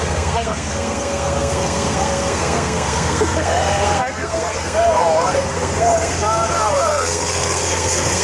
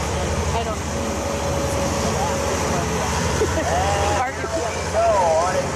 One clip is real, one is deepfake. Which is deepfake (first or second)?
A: first